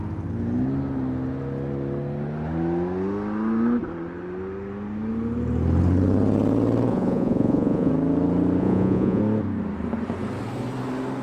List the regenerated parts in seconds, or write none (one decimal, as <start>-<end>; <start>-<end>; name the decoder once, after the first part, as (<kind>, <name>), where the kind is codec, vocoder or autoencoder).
6.9-7.9 (vocoder, Vocos); 8.6-9.2